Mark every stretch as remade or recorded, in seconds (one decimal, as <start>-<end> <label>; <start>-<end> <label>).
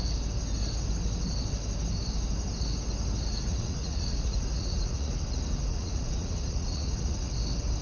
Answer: 0.0-3.5 recorded; 3.5-7.3 remade; 7.3-7.8 recorded